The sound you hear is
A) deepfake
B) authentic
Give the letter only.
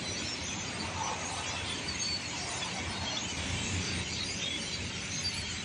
A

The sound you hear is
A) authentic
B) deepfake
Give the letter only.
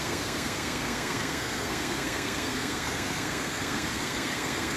B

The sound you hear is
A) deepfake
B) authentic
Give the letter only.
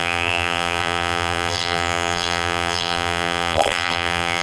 A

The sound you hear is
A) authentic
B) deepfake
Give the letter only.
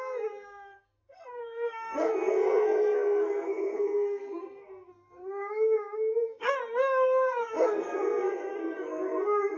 B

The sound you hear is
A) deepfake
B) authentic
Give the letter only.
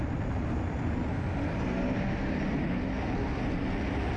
B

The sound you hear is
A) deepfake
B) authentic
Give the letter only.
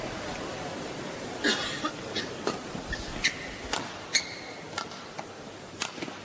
B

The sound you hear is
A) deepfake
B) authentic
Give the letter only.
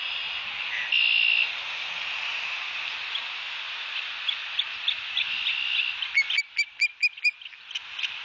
B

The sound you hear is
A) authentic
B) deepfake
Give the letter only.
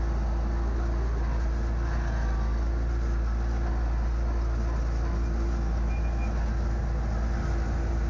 A